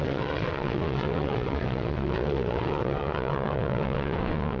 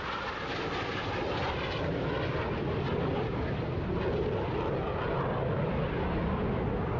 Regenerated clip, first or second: first